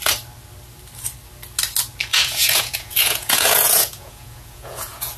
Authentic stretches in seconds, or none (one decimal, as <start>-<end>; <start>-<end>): 0.0-2.1